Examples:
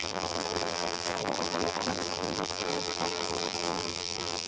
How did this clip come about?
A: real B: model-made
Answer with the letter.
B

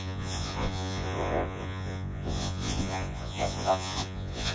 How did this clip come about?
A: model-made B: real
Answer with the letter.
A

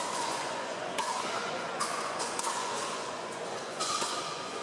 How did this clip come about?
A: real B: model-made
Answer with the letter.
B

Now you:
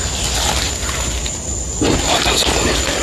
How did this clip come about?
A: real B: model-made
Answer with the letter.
A